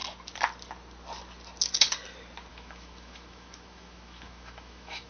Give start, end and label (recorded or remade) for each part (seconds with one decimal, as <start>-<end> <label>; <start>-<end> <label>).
0.0-2.5 recorded; 2.5-5.1 remade